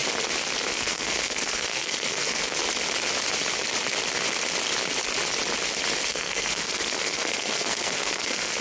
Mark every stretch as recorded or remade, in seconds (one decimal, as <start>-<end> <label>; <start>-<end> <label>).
0.0-0.7 recorded; 0.7-2.6 remade; 2.6-6.1 recorded; 6.1-8.6 remade